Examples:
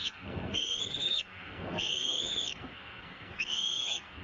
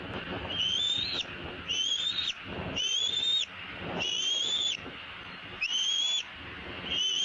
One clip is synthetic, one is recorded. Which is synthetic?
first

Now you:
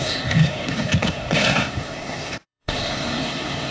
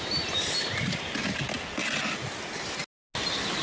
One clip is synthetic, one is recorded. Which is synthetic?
first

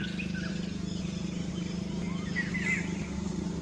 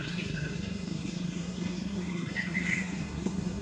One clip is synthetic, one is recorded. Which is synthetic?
second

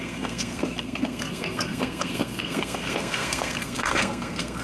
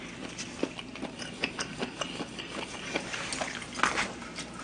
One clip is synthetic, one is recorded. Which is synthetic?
first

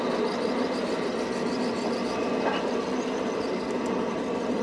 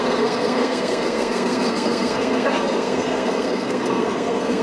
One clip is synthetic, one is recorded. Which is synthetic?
second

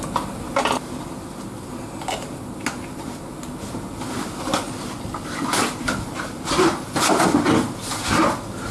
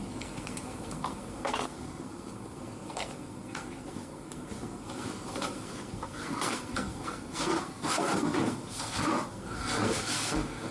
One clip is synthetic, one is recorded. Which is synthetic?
second